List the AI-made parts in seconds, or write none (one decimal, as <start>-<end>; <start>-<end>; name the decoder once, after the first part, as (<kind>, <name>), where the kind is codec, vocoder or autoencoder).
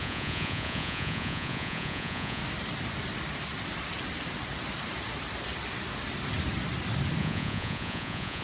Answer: 0.0-2.4 (vocoder, Vocos); 7.2-8.4